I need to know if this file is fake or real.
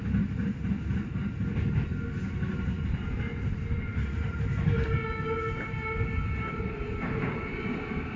real